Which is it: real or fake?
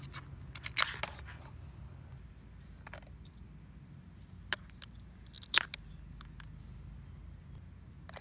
real